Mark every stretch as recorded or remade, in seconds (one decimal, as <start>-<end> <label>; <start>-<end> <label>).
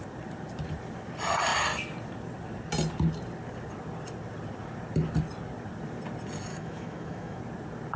0.0-6.5 recorded; 6.5-7.4 remade; 7.4-8.0 recorded